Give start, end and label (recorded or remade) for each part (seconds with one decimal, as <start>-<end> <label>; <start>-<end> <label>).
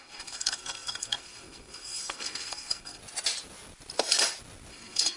0.0-3.0 remade; 3.0-4.7 recorded; 4.7-5.2 remade